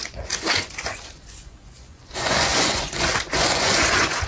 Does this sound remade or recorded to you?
remade